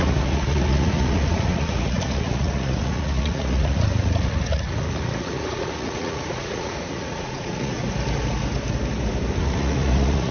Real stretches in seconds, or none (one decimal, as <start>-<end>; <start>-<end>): 7.8-9.4